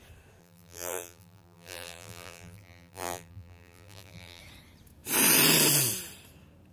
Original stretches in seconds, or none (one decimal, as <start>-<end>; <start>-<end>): 0.0-0.4; 4.4-6.7